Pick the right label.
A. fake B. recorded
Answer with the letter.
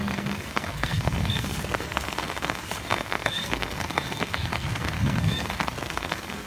A